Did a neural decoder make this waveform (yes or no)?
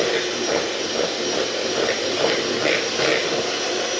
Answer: no